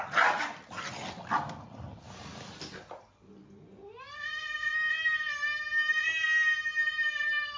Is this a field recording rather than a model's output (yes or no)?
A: yes